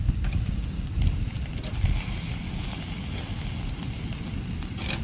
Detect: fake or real real